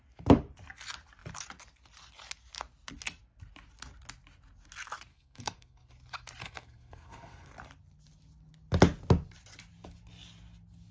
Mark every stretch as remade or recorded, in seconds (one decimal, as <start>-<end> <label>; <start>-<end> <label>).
0.0-5.1 recorded; 5.1-5.9 remade; 5.9-6.4 recorded; 6.4-7.5 remade; 7.5-10.9 recorded